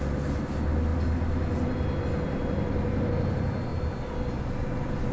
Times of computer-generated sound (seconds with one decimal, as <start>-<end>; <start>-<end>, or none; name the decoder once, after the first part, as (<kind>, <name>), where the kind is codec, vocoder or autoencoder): none